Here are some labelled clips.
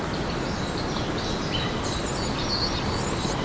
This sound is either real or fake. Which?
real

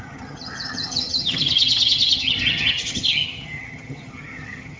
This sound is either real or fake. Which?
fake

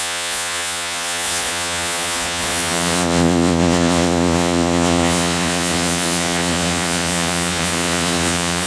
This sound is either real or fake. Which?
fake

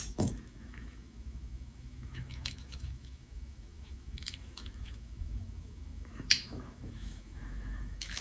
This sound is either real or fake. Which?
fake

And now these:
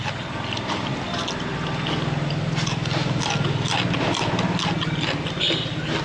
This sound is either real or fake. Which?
real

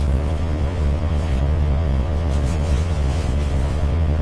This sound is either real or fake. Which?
fake